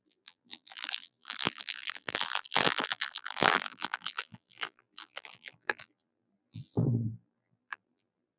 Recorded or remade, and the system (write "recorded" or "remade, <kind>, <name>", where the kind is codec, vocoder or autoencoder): remade, vocoder, BigVGAN v2